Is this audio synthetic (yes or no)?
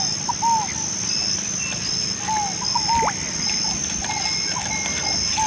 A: no